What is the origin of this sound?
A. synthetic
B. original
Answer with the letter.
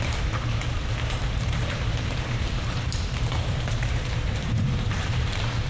A